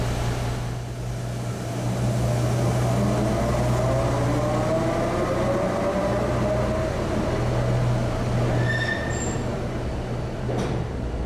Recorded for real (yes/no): yes